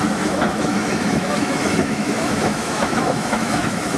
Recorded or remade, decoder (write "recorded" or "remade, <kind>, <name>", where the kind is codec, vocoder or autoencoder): remade, autoencoder, DAC-VAE